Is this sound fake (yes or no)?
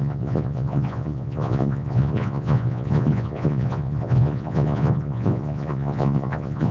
yes